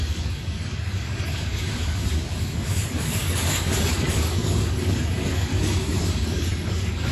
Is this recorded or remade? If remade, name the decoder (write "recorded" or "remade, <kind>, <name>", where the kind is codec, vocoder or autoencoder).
remade, codec, DAC